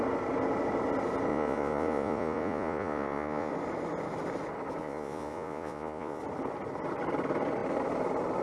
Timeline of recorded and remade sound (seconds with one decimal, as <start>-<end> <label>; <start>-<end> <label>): 0.0-1.3 recorded; 1.3-3.5 remade; 3.5-4.8 recorded; 4.8-6.2 remade; 6.2-8.4 recorded